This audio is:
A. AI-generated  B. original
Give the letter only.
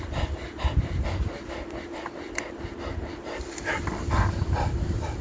B